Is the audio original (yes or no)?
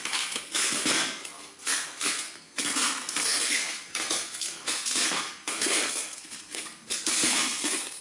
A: no